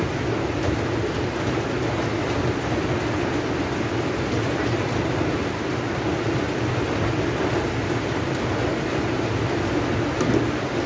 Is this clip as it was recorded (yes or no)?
yes